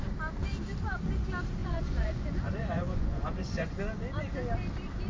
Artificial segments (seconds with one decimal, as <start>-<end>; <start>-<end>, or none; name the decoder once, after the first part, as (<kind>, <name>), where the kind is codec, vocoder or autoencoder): 1.6-3.8 (vocoder, Vocos)